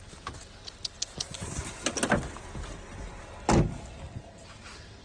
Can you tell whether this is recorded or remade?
recorded